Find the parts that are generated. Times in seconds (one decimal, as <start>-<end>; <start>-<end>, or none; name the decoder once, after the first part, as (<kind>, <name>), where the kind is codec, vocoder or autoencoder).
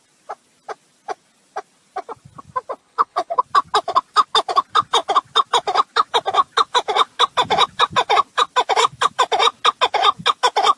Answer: 2.8-3.4 (codec, HILCodec)